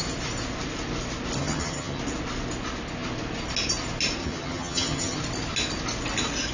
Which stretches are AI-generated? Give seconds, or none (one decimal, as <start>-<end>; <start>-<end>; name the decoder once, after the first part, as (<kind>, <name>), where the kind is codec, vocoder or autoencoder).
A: 1.4-2.0 (vocoder, HiFi-GAN); 4.2-5.2